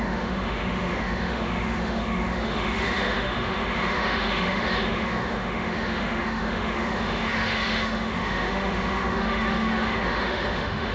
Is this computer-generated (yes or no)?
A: yes